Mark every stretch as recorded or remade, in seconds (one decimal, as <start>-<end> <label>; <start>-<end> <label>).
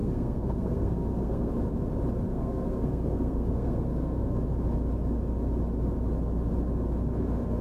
0.0-1.5 remade; 1.5-2.3 recorded; 2.3-4.4 remade; 4.4-7.6 recorded